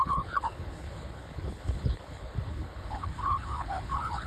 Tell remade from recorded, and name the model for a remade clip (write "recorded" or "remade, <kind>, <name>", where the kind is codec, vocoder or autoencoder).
remade, codec, HILCodec